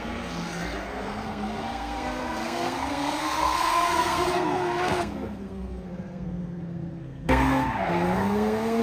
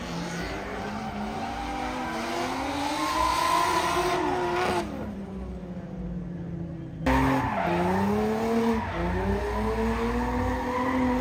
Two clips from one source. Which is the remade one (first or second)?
first